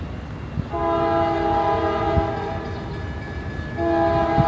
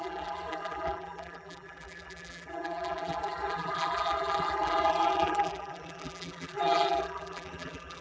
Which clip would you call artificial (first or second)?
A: second